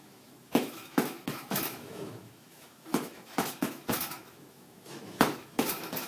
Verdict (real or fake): fake